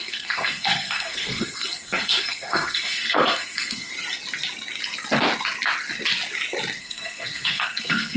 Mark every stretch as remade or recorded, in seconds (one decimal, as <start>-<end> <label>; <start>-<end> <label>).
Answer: 0.0-3.9 remade; 3.9-6.8 recorded; 6.8-8.2 remade